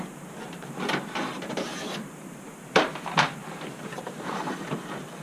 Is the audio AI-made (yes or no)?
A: yes